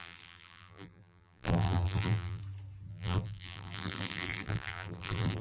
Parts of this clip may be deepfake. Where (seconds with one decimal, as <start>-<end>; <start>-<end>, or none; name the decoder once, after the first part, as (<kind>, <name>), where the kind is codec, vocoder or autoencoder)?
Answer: 0.0-2.4 (vocoder, BigVGAN v2); 2.9-5.4